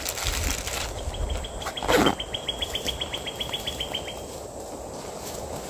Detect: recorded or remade recorded